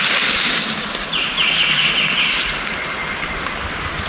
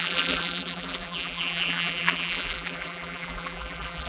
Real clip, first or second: first